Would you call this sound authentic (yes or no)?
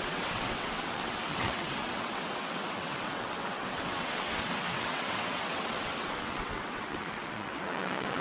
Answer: no